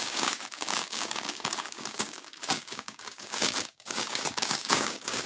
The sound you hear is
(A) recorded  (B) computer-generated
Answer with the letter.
B